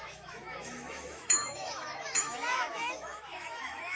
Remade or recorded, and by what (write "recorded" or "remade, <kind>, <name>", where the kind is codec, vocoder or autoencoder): remade, autoencoder, DAC-VAE